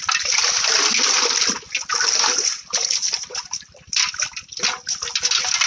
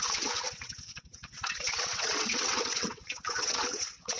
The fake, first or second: second